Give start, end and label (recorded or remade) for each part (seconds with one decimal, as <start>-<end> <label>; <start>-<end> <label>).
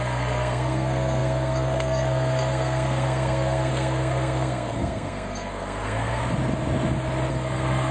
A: 0.0-6.2 remade; 6.2-7.3 recorded; 7.3-7.9 remade